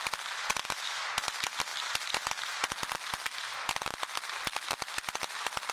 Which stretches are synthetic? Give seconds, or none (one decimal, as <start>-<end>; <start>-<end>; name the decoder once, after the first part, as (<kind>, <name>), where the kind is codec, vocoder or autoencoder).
0.5-1.2 (vocoder, BigVGAN v2); 1.7-2.8